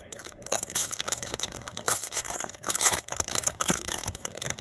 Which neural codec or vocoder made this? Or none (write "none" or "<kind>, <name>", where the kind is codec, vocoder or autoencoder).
codec, SNAC